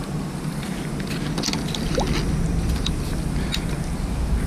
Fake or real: real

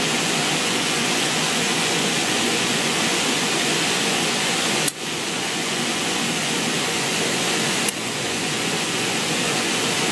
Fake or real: fake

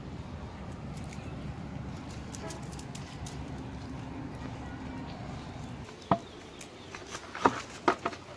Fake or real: real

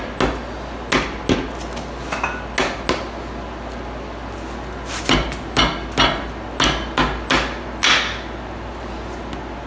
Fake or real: real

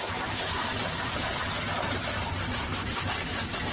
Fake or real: fake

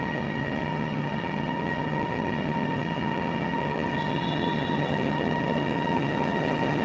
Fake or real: fake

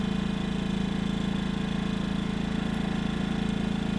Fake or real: real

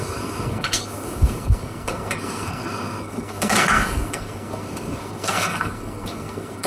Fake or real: fake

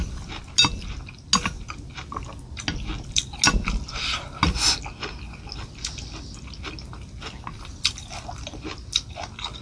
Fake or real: real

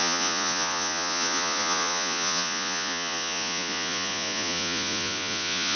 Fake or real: fake